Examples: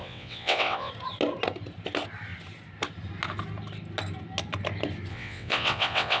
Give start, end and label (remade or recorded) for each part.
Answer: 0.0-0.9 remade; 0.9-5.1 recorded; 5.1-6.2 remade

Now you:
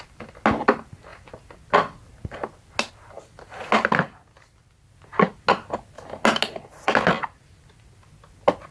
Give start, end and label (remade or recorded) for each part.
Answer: 0.0-8.7 recorded

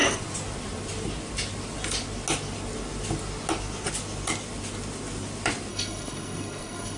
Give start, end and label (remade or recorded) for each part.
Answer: 0.0-5.7 recorded; 5.7-7.0 remade

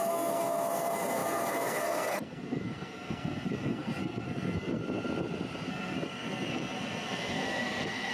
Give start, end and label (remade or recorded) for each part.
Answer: 0.0-4.8 remade; 4.8-5.7 recorded; 5.7-8.1 remade

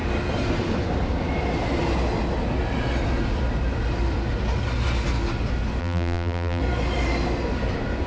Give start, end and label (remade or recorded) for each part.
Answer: 0.0-5.8 recorded; 5.8-6.6 remade; 6.6-8.1 recorded

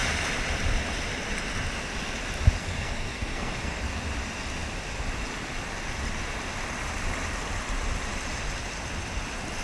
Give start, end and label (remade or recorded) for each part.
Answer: 0.0-2.6 recorded; 2.6-3.8 remade; 3.8-9.6 recorded

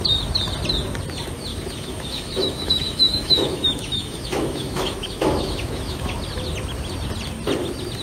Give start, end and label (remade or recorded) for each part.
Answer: 0.0-1.5 recorded; 1.5-6.2 remade; 6.2-8.0 recorded